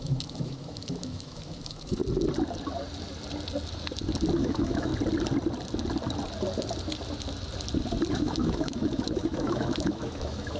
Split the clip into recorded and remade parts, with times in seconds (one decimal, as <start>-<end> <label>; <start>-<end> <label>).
0.0-2.0 remade; 2.0-4.4 recorded; 4.4-4.9 remade; 4.9-8.1 recorded; 8.1-10.6 remade

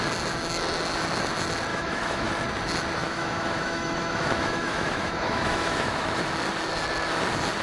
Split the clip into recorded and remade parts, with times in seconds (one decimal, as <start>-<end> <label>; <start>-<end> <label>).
0.0-1.7 recorded; 1.7-2.3 remade; 2.3-3.0 recorded; 3.0-6.2 remade; 6.2-7.6 recorded

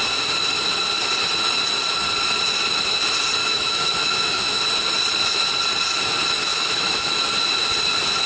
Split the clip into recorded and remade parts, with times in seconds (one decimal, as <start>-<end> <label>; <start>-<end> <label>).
0.0-3.4 recorded; 3.4-4.6 remade; 4.6-6.5 recorded; 6.5-7.1 remade; 7.1-8.3 recorded

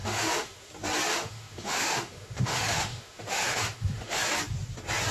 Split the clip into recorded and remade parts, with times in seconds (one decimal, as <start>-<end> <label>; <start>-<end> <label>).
0.0-0.7 remade; 0.7-1.1 recorded; 1.1-4.2 remade; 4.2-5.1 recorded